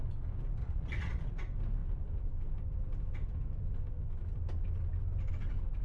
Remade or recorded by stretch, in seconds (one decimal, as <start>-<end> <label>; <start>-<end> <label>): 0.0-0.6 recorded; 0.6-1.3 remade; 1.3-5.8 recorded